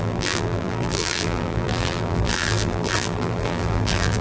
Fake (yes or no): yes